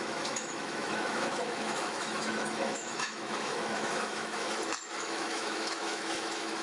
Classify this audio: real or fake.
fake